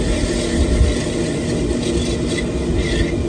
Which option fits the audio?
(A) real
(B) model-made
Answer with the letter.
A